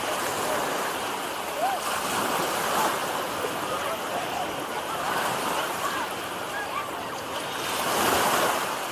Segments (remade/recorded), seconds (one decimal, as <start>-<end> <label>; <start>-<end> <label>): 0.0-8.9 recorded